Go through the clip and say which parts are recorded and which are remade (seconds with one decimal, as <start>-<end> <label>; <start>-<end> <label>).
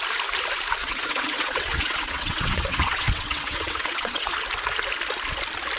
0.0-0.8 recorded; 0.8-4.3 remade; 4.3-5.8 recorded